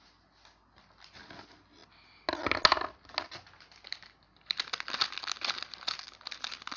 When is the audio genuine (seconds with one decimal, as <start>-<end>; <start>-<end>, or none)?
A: 0.0-6.8